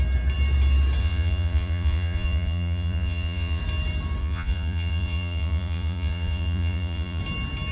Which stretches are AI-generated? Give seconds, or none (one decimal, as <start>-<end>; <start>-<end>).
1.0-3.6; 4.2-7.2

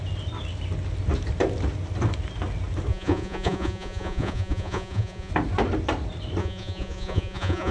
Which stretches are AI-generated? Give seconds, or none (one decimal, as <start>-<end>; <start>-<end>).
2.9-5.3; 6.4-7.7

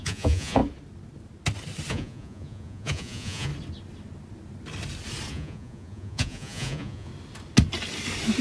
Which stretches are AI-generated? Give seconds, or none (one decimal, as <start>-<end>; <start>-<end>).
0.0-0.6; 1.9-3.5; 5.3-7.1

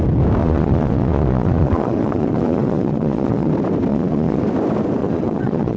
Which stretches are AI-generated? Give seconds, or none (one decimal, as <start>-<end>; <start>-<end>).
0.4-3.5; 3.9-4.4; 5.0-5.8

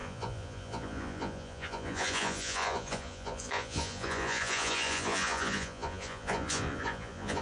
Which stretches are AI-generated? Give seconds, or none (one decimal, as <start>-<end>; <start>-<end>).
0.0-7.4

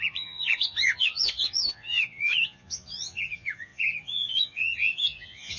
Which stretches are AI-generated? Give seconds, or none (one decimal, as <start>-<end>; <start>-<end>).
0.0-5.6

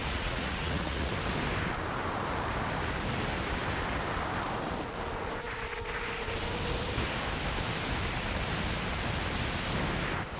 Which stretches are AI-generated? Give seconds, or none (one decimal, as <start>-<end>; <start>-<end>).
0.0-1.1

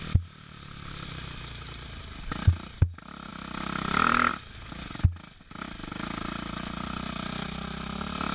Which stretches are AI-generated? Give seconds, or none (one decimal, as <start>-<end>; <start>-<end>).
none